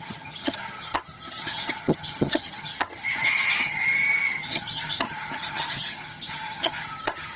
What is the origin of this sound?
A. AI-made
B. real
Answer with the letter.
A